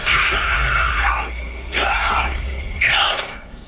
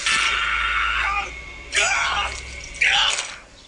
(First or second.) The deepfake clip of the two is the first